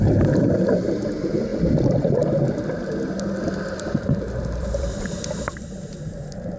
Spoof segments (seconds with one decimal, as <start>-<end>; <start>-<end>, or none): 1.5-4.9